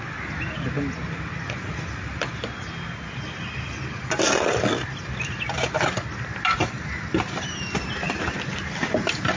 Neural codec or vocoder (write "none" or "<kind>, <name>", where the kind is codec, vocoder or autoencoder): none